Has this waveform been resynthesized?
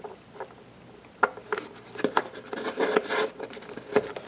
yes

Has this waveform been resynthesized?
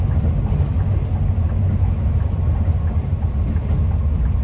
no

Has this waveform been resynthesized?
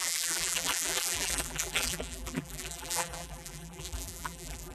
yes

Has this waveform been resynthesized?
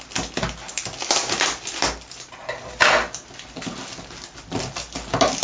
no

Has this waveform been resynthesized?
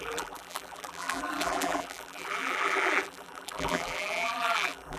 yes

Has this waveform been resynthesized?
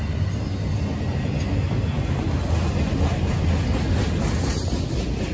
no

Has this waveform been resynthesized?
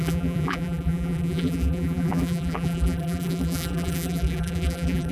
yes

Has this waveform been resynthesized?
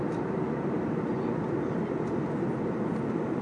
yes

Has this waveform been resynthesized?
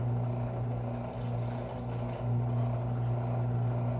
no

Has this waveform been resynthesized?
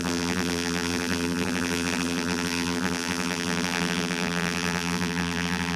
yes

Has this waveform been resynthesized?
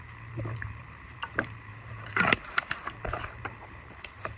yes